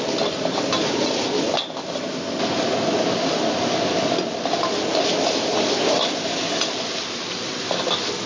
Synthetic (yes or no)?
no